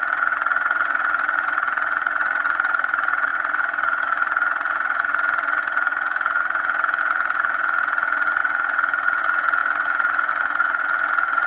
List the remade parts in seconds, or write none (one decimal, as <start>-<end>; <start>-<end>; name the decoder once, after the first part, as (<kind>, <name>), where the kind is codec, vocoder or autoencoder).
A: 0.0-11.5 (vocoder, HiFi-GAN)